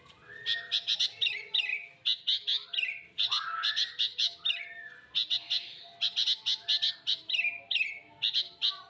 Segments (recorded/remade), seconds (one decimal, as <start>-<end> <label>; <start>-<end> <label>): 0.0-8.9 recorded